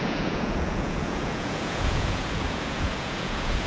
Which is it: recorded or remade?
remade